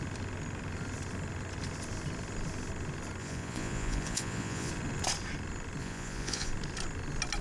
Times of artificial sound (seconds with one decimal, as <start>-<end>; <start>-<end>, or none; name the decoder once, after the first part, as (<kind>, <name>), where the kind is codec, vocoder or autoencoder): 3.2-4.7 (vocoder, Vocos); 5.8-6.5